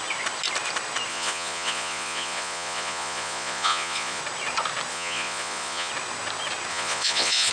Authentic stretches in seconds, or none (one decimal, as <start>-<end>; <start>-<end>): 0.0-1.1; 4.2-4.9; 5.9-6.7